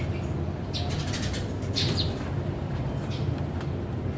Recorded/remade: recorded